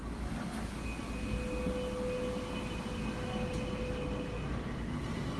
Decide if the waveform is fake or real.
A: real